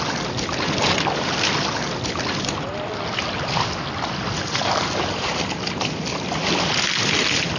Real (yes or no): yes